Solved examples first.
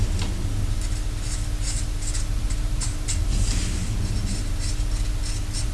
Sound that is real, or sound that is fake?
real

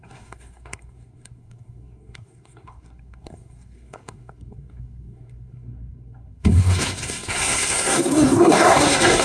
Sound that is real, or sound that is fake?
fake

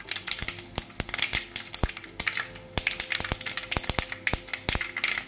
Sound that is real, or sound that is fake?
real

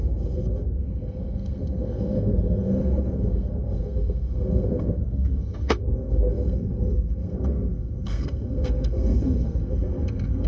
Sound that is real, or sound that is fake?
fake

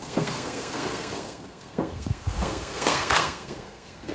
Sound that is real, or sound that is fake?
fake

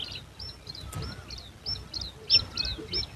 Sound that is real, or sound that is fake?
real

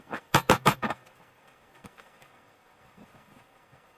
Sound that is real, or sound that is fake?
fake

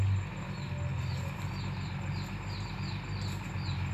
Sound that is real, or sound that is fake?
real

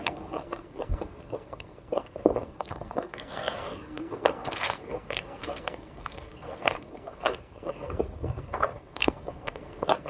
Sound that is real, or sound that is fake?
fake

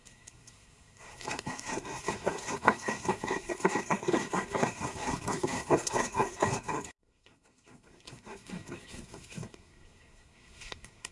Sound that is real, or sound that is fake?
fake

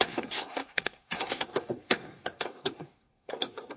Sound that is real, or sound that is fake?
fake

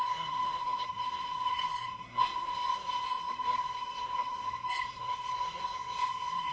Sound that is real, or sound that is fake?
fake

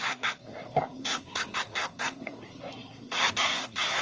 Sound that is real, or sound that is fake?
fake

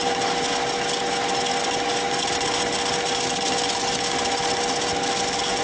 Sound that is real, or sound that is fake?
real